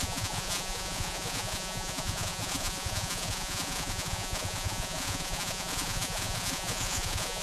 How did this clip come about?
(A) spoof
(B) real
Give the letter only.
A